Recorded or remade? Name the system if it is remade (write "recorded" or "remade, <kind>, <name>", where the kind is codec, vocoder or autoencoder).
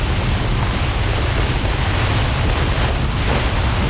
recorded